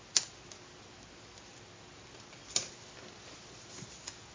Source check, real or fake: real